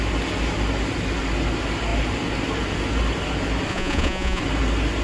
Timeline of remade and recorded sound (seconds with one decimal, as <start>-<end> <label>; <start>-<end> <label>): 0.0-3.7 recorded; 3.7-4.4 remade; 4.4-5.0 recorded